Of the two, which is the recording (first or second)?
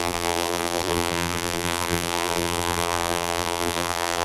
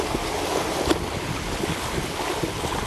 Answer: second